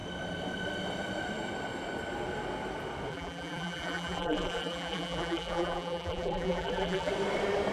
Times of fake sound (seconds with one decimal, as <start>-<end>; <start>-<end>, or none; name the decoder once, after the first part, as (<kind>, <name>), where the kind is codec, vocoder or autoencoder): 3.1-7.1 (vocoder, BigVGAN v2)